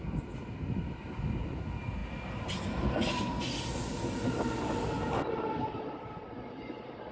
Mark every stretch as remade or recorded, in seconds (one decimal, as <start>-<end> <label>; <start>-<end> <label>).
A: 0.0-7.1 recorded